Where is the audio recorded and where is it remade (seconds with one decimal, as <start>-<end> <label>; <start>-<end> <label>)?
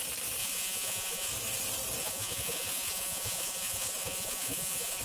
0.0-0.4 recorded; 0.4-1.3 remade; 1.3-2.0 recorded; 2.0-5.0 remade